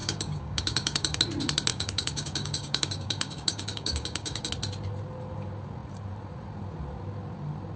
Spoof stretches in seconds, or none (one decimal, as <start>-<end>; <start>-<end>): 0.0-1.2; 1.7-4.5